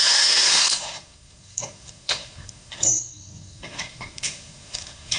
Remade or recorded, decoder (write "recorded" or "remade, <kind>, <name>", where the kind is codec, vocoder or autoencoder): remade, codec, SNAC